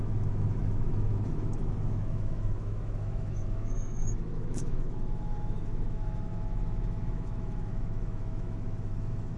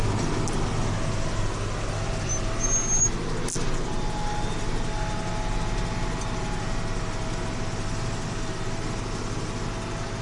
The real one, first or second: second